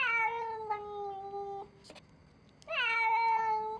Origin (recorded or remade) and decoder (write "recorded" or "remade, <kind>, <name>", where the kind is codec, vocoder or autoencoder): recorded